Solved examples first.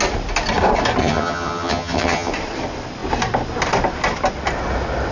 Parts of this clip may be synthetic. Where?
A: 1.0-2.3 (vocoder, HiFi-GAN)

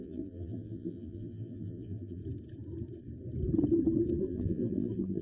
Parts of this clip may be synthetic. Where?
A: 0.0-2.2 (vocoder, BigVGAN v2); 4.2-5.2

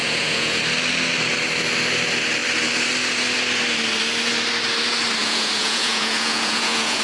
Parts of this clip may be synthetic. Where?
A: 0.0-0.6 (vocoder, Vocos); 5.2-7.0

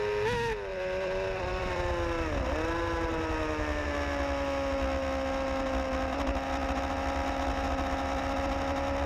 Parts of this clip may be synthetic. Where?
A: 0.7-1.9 (vocoder, BigVGAN v2)

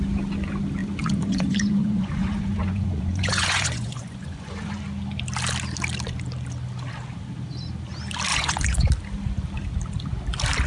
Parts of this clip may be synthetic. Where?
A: 0.8-4.8 (vocoder, Vocos); 8.3-8.9

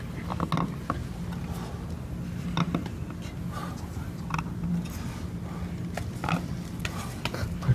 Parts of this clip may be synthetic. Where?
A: none